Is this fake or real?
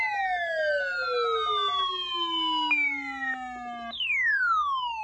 real